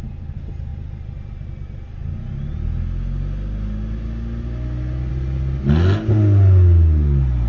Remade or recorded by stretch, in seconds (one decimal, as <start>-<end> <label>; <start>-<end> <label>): 0.0-7.5 recorded